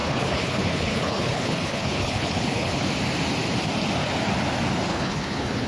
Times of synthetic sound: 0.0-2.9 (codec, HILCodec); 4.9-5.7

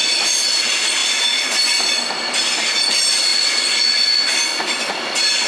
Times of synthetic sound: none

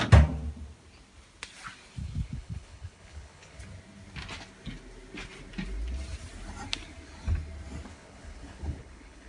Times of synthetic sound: 2.0-3.6 (codec, HILCodec); 7.9-9.3

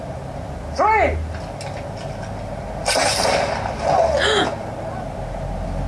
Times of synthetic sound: none

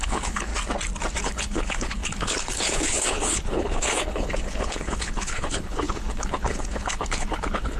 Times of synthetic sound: 0.0-0.5 (codec, HILCodec); 1.2-7.8